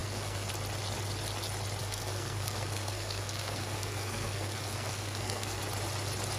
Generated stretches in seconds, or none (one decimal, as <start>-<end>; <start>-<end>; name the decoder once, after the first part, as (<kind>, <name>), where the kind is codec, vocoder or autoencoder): 0.0-0.5 (codec, SNAC); 1.8-5.6

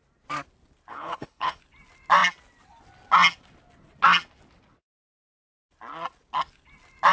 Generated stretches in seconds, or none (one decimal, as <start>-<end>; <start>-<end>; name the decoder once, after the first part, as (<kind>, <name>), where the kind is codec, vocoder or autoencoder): 0.9-1.6 (codec, HILCodec)

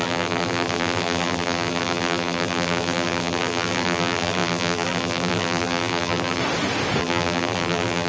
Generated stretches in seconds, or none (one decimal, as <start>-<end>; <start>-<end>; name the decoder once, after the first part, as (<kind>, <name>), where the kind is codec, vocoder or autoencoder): 0.0-6.4 (vocoder, BigVGAN v2); 7.0-8.1

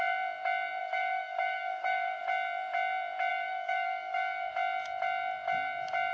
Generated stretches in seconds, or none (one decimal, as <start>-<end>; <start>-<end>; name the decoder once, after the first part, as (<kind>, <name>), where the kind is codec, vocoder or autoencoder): 0.8-2.2 (codec, DAC); 3.3-4.5

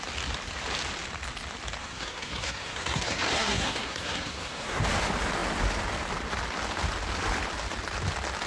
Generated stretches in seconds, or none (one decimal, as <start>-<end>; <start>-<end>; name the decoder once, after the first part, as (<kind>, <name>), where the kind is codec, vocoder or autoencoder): 1.8-4.8 (codec, SNAC)

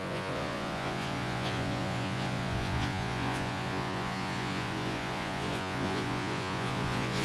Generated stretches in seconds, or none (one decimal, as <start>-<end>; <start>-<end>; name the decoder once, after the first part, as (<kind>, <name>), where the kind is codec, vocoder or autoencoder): 0.0-7.2 (vocoder, Vocos)

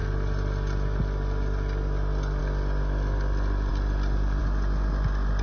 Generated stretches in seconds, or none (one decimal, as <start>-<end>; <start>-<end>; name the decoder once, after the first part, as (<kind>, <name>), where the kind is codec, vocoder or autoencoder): none